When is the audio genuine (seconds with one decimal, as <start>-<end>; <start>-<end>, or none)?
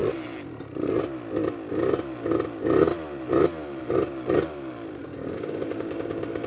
0.0-5.0